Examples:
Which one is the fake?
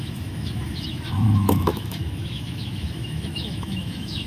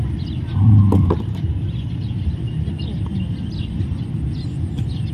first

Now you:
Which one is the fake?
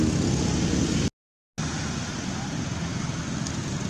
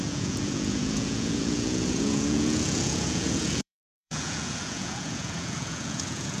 second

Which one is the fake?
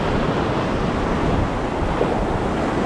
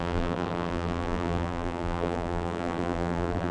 second